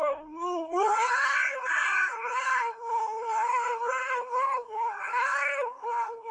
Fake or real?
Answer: fake